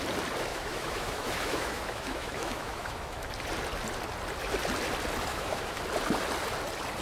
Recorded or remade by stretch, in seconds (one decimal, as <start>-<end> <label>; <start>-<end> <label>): 0.0-0.5 recorded; 0.5-3.3 remade; 3.3-5.3 recorded; 5.3-5.8 remade; 5.8-7.0 recorded